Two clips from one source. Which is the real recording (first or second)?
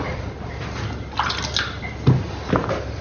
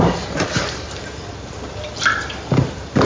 first